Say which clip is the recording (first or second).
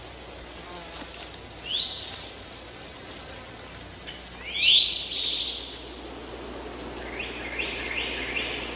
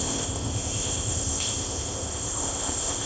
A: first